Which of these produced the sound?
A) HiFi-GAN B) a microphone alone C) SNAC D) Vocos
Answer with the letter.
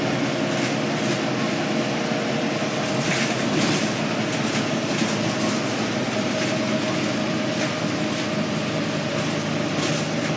B